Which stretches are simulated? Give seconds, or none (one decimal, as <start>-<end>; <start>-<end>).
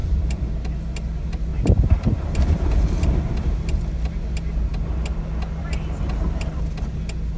0.0-0.5; 1.5-3.2